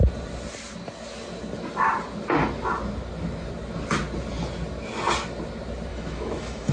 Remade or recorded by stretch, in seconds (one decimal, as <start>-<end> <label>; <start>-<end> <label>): 0.0-5.9 recorded; 5.9-6.7 remade